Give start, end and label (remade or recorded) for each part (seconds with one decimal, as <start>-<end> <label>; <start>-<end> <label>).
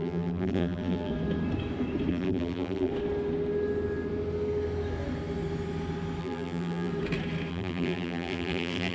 0.0-1.1 remade; 1.1-2.1 recorded; 2.1-2.9 remade; 2.9-6.2 recorded; 6.2-6.9 remade; 6.9-7.5 recorded; 7.5-8.9 remade